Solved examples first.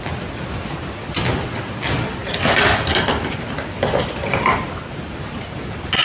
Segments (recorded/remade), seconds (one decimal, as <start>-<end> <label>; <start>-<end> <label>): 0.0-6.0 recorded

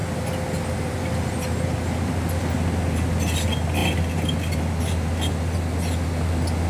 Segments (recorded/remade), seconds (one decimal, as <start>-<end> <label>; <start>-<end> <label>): 0.0-6.7 recorded

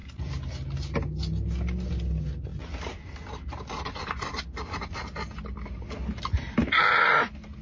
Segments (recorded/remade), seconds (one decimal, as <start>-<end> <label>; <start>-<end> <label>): 0.0-7.6 recorded

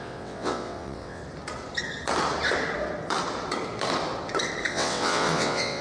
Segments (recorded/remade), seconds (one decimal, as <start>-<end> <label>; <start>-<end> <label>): 0.0-1.2 remade; 1.2-4.7 recorded; 4.7-5.8 remade

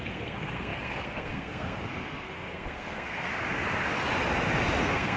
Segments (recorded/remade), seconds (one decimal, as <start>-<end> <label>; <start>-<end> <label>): 0.0-3.3 remade; 3.3-4.8 recorded; 4.8-5.2 remade